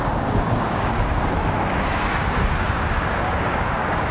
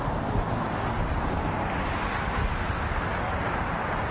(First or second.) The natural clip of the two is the second